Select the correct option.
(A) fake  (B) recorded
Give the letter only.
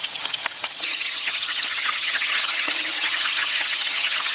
A